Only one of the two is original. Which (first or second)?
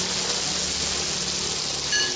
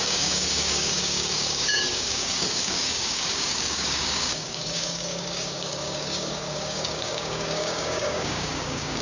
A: first